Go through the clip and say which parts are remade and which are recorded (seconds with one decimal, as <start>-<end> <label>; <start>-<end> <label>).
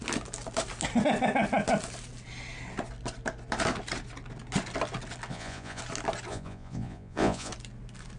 0.0-5.3 recorded; 5.3-5.8 remade; 5.8-6.3 recorded; 6.3-7.5 remade; 7.5-8.2 recorded